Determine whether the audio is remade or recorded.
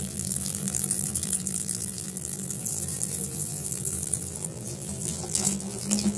remade